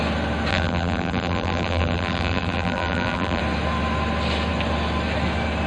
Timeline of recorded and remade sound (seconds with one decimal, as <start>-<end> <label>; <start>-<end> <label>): 0.0-0.5 recorded; 0.5-3.4 remade; 3.4-5.7 recorded